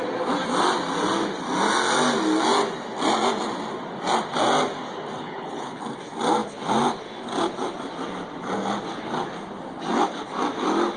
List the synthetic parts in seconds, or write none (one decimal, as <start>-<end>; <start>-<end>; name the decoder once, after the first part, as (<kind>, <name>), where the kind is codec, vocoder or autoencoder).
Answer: 5.2-5.8 (codec, HILCodec)